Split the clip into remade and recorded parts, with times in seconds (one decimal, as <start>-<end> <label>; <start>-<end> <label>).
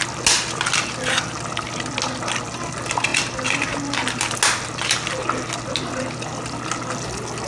0.0-7.5 recorded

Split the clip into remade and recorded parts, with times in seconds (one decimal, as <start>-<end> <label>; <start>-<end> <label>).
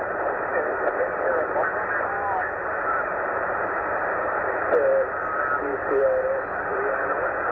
0.0-0.5 remade; 0.5-2.7 recorded; 2.7-4.9 remade; 4.9-7.5 recorded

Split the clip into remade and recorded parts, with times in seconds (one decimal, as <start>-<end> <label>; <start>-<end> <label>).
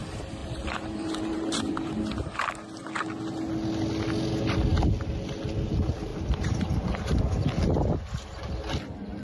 0.0-0.4 recorded; 0.4-2.0 remade; 2.0-6.1 recorded; 6.1-7.2 remade; 7.2-9.2 recorded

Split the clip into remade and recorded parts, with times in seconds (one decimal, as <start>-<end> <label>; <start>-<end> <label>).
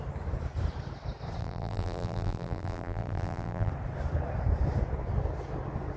0.0-1.4 recorded; 1.4-3.7 remade; 3.7-6.0 recorded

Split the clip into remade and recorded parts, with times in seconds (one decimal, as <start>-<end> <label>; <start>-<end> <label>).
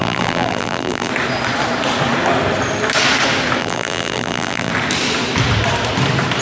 0.0-1.1 remade; 1.1-3.6 recorded; 3.6-4.7 remade; 4.7-6.4 recorded